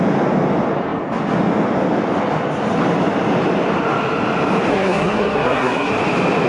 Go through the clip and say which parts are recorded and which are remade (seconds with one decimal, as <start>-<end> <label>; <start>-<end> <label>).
0.0-4.7 recorded; 4.7-5.9 remade; 5.9-6.5 recorded